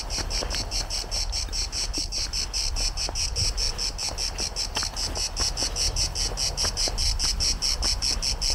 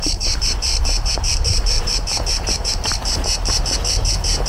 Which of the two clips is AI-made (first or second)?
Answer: second